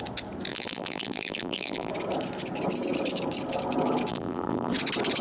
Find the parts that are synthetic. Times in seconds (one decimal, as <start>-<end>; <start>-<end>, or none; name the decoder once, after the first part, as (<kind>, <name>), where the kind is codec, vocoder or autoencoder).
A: 0.5-1.9 (vocoder, BigVGAN v2); 4.1-4.7